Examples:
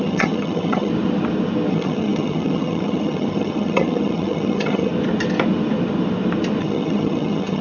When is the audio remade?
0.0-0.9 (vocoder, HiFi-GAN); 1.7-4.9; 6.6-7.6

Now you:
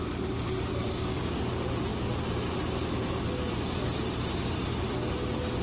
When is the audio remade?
0.7-1.4 (codec, DAC)

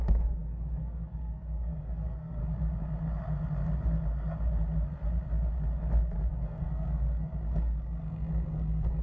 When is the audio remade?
0.0-2.4 (codec, SNAC); 6.3-9.0

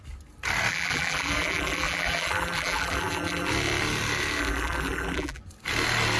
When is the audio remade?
0.7-3.5 (vocoder, BigVGAN v2); 4.4-5.4

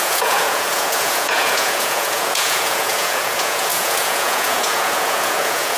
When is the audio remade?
0.0-5.8 (vocoder, Vocos)

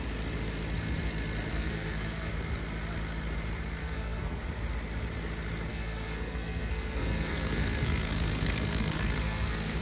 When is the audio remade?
1.5-2.3 (codec, SNAC); 3.8-4.4; 5.7-9.8

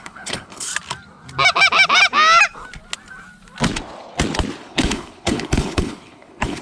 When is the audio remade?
0.0-0.7 (codec, HILCodec); 4.6-6.6

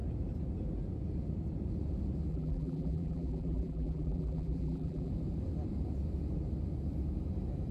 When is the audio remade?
2.3-5.1 (vocoder, BigVGAN v2)